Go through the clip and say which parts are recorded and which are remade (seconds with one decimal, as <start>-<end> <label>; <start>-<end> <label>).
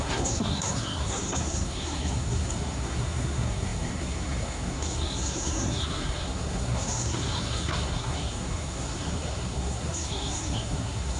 0.0-11.2 remade